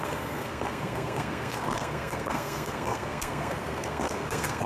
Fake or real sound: fake